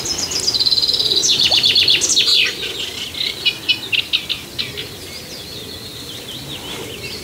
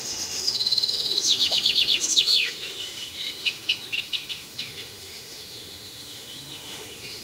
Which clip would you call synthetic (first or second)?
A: second